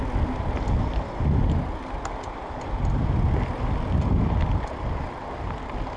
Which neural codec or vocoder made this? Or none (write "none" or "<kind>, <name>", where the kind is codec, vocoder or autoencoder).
none